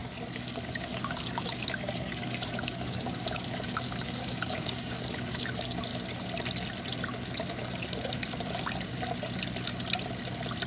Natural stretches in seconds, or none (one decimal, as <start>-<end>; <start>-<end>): 5.9-10.7